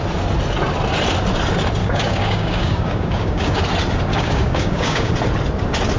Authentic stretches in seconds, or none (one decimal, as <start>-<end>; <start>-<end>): 0.0-1.8; 3.6-4.1; 5.1-6.0

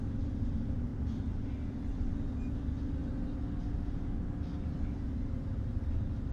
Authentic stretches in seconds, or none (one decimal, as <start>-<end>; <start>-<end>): 0.0-6.3